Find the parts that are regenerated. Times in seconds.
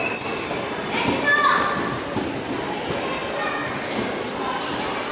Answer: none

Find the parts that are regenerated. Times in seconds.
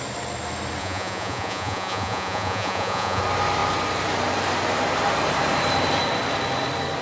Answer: 0.8-3.2 (vocoder, Vocos)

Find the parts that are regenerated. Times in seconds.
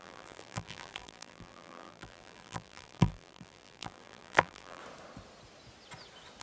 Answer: 0.0-4.8 (vocoder, BigVGAN v2)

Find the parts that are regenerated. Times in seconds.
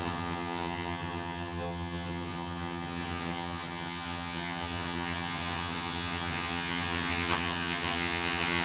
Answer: 0.0-8.6 (vocoder, HiFi-GAN)